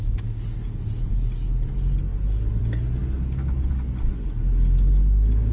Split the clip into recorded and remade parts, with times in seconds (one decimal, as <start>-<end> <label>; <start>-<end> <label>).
0.0-5.5 recorded